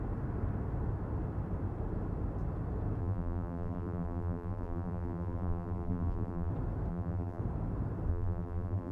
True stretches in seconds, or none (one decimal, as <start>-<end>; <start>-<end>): 0.0-3.0; 6.5-6.9; 7.4-8.1